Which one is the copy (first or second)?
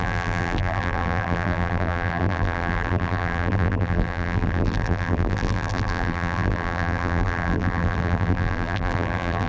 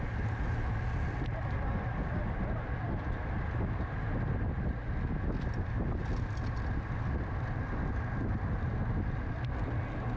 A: first